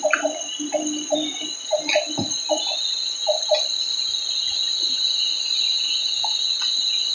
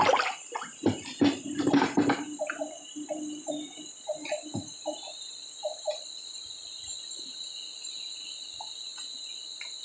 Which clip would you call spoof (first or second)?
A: second